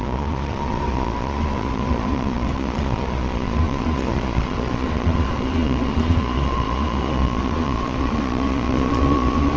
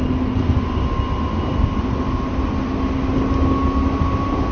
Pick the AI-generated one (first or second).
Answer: first